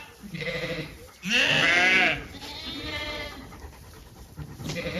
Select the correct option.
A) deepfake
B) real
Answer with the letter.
A